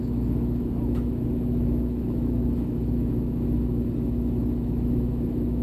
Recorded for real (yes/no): no